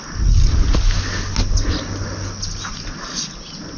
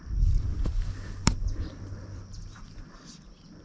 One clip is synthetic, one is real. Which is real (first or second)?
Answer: first